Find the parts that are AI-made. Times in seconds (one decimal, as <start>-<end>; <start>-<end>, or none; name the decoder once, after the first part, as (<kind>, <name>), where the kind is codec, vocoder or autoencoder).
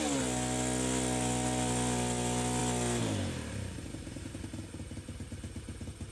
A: none